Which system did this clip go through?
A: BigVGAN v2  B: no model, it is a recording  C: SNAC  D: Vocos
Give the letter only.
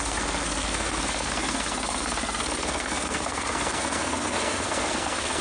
C